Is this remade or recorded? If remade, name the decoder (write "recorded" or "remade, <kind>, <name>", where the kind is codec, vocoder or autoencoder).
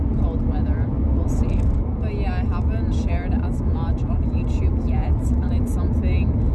recorded